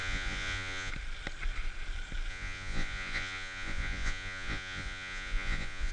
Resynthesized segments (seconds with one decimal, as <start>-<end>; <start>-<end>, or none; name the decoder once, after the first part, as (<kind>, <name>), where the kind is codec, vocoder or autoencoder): 0.0-0.9 (vocoder, Vocos); 2.3-5.9